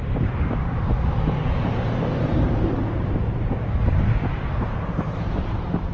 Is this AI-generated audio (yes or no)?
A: yes